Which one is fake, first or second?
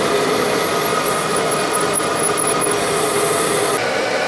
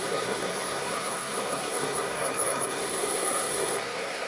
second